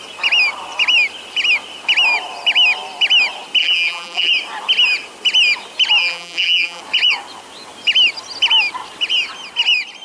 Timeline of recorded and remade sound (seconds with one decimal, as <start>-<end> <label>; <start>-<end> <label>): 0.0-3.6 recorded; 3.6-4.3 remade; 4.3-6.0 recorded; 6.0-6.8 remade; 6.8-10.0 recorded